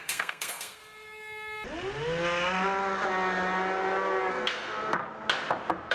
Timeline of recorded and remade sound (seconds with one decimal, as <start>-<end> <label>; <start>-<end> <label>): 0.0-0.8 remade; 0.8-4.3 recorded; 4.3-5.0 remade; 5.0-5.9 recorded